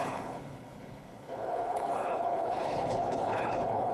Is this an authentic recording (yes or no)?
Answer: no